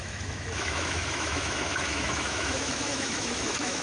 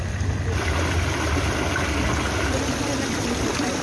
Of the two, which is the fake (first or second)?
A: first